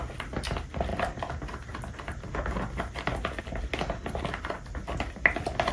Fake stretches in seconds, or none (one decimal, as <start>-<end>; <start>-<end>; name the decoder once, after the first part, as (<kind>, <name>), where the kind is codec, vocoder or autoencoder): none

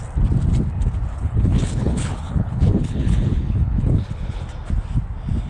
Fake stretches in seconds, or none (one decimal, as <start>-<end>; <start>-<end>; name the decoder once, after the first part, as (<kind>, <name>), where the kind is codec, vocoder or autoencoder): 1.1-4.4 (codec, HILCodec)

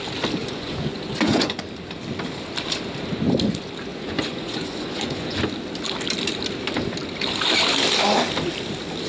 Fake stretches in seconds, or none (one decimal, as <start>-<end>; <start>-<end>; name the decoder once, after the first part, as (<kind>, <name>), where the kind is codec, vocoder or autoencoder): 0.4-1.6 (vocoder, Vocos); 3.9-5.4

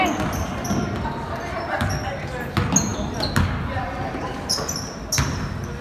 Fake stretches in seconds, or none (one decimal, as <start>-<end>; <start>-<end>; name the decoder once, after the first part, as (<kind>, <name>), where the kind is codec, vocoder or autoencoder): none

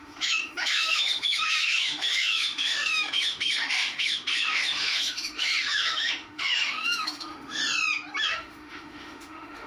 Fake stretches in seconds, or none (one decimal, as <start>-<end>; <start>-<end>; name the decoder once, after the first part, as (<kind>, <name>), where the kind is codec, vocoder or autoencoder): 0.0-7.6 (autoencoder, DAC-VAE); 8.2-9.7

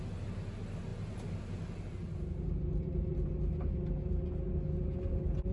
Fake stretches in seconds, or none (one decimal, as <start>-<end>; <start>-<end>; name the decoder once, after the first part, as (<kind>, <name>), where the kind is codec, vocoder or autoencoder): none

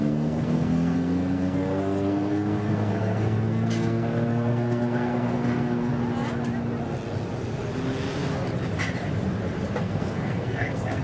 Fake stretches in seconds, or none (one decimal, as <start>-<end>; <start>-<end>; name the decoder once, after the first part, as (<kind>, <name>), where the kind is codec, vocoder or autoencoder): 0.0-5.9 (codec, SNAC); 9.8-11.0

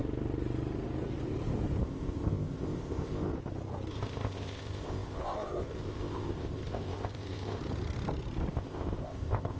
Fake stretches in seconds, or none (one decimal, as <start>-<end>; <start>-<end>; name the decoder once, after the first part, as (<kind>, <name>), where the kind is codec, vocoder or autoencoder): 1.8-3.3 (codec, ZipCodec); 3.9-7.6; 8.5-9.6